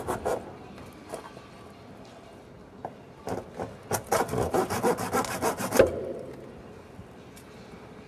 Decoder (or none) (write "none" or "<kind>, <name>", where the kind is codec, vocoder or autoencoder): none